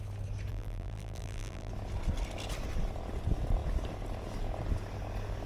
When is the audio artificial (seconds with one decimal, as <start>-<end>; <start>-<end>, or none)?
0.5-1.7